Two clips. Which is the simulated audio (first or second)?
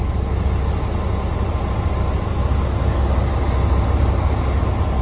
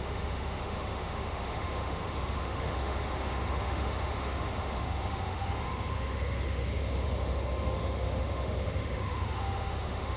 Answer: second